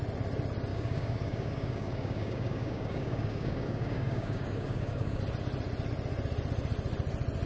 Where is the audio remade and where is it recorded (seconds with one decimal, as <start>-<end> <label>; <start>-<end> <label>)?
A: 0.0-0.7 recorded; 0.7-5.2 remade; 5.2-7.5 recorded